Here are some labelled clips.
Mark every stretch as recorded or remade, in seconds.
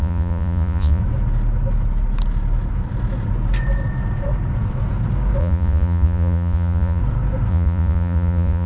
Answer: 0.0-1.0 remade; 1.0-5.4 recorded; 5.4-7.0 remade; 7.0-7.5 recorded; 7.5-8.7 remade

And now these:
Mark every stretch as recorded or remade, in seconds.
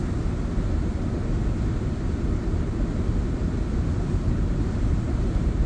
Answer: 0.0-5.7 recorded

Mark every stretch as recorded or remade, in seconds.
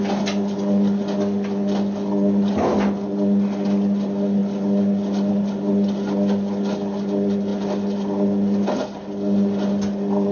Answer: 0.0-10.3 recorded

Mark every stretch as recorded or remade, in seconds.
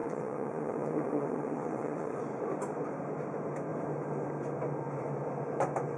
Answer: 0.0-2.2 remade; 2.2-6.0 recorded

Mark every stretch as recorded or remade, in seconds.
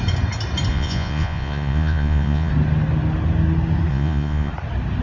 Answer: 0.0-0.7 recorded; 0.7-2.5 remade; 2.5-3.9 recorded; 3.9-4.5 remade; 4.5-5.0 recorded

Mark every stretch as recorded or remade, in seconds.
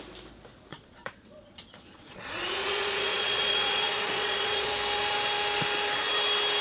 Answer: 0.0-0.7 recorded; 0.7-4.7 remade; 4.7-6.6 recorded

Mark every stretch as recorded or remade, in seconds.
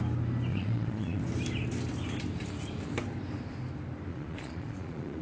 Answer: 0.0-0.5 recorded; 0.5-1.2 remade; 1.2-4.1 recorded; 4.1-5.2 remade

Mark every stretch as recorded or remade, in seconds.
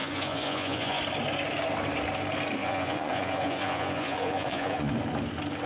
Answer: 0.0-1.0 remade; 1.0-2.6 recorded; 2.6-4.9 remade; 4.9-5.7 recorded